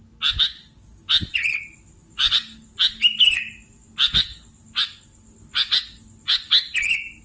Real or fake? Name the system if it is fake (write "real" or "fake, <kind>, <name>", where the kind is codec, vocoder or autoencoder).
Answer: real